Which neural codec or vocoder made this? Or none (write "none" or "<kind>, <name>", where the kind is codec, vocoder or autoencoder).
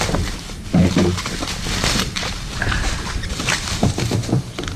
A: vocoder, BigVGAN v2